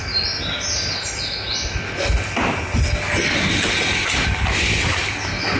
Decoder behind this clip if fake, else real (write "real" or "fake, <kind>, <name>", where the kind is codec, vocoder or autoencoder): real